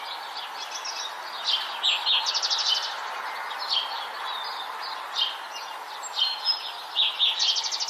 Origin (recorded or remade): recorded